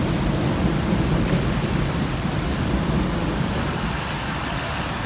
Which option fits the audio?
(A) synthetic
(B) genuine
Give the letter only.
B